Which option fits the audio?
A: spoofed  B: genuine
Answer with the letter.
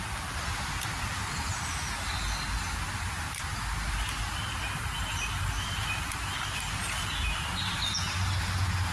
B